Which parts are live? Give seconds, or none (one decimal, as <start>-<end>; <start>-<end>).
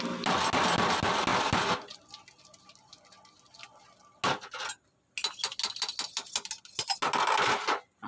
0.0-8.1